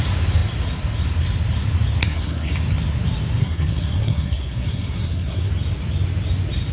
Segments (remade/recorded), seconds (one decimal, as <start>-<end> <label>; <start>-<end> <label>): 0.0-2.0 recorded; 2.0-2.5 remade; 2.5-3.4 recorded; 3.4-5.5 remade; 5.5-6.7 recorded